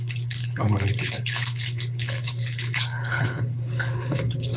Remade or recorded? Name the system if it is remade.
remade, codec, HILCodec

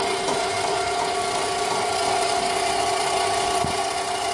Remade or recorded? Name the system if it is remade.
recorded